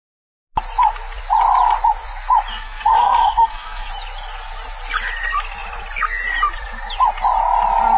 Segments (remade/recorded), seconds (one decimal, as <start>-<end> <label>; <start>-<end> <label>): 0.0-2.5 recorded; 2.5-3.9 remade; 3.9-8.0 recorded

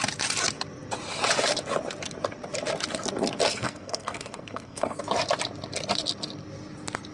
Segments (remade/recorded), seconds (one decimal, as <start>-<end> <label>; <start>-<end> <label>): 0.0-3.5 recorded; 3.5-5.0 remade; 5.0-7.1 recorded